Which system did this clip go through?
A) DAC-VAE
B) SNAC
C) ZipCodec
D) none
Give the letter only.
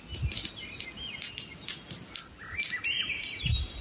D